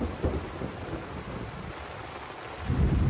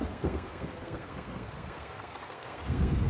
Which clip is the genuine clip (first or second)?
first